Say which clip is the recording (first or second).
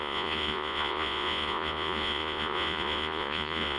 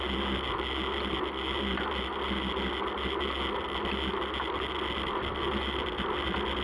second